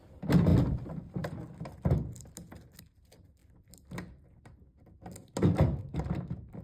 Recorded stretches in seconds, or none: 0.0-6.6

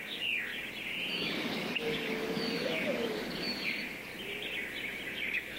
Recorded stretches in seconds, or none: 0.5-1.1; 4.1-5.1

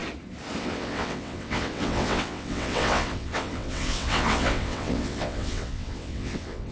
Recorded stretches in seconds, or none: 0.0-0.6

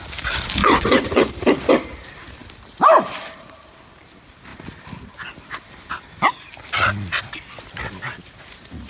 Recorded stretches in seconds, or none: 0.0-0.6; 1.3-8.9

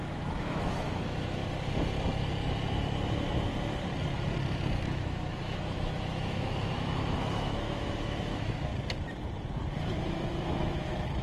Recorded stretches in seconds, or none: 1.4-4.8; 8.7-10.0

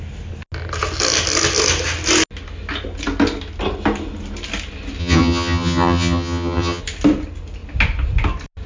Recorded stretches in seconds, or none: 0.0-5.0; 6.8-8.7